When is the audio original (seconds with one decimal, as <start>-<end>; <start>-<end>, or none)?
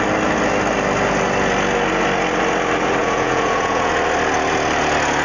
0.0-3.0; 3.9-5.2